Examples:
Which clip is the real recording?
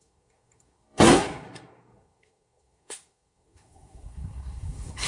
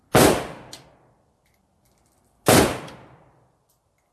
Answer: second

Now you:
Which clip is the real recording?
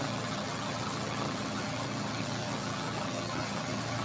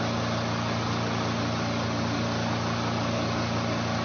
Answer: second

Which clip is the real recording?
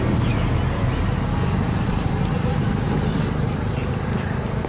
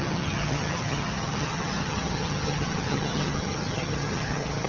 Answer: first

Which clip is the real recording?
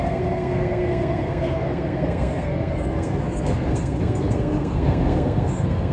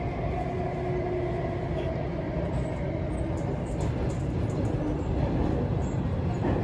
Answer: second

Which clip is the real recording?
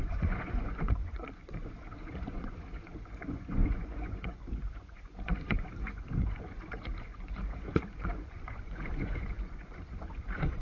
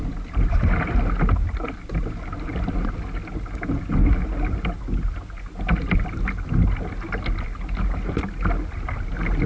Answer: second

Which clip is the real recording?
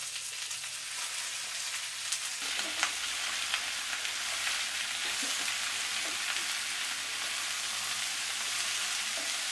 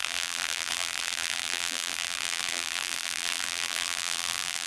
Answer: first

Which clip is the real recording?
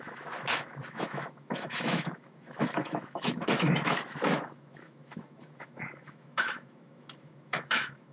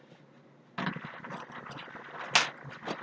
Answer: second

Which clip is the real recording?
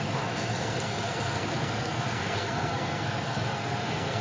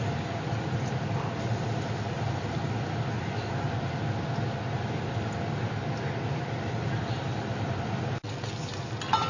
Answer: second